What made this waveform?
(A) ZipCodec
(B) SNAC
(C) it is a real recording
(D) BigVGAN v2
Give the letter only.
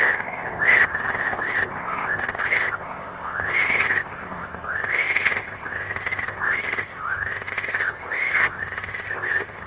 A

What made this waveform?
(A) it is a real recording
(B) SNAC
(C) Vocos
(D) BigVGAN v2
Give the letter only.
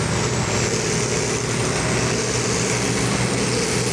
A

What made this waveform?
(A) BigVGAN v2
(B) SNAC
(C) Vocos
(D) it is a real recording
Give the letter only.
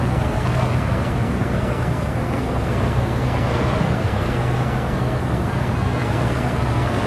B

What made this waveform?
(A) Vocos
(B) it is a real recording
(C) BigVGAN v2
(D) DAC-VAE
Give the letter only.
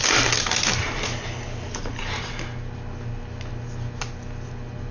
B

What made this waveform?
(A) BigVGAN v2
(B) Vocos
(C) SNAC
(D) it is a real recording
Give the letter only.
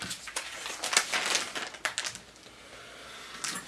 D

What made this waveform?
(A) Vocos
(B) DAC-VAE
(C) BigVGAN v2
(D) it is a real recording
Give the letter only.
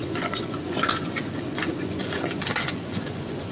A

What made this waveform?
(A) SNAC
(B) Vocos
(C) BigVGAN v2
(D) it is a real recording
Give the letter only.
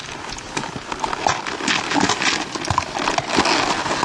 D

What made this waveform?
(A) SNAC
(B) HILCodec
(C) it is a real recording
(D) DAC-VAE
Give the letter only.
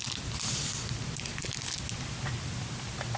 C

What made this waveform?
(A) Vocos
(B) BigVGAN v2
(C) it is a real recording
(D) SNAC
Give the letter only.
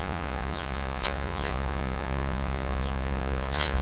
A